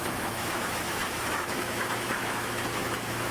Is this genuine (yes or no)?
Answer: no